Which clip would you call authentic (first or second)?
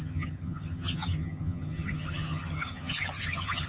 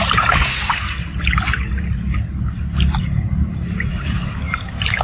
second